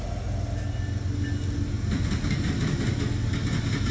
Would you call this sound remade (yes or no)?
no